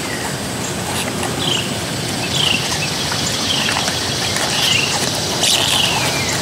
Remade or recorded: recorded